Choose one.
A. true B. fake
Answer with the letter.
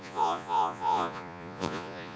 B